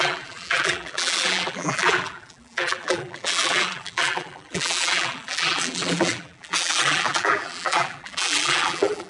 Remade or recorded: remade